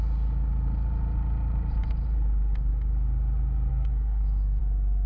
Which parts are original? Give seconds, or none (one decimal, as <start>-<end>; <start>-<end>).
0.0-3.7; 4.6-5.1